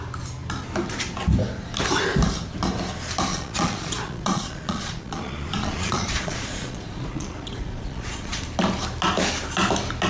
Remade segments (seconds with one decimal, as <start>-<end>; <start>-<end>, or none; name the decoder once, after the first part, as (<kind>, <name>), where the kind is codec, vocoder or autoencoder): 3.3-8.4 (vocoder, Vocos)